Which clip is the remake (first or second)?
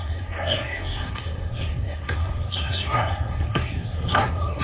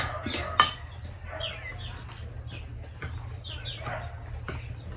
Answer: first